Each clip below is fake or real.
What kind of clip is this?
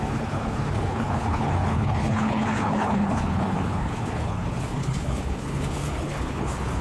fake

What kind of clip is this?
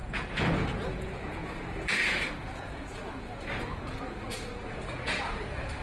fake